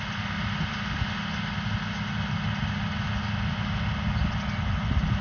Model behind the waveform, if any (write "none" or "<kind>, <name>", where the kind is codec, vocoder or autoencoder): none